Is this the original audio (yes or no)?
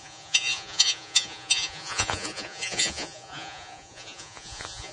no